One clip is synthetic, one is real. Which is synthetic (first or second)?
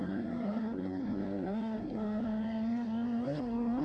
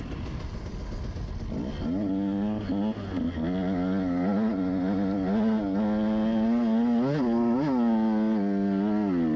first